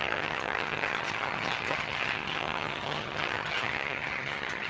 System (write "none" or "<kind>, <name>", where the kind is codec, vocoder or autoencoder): vocoder, HiFi-GAN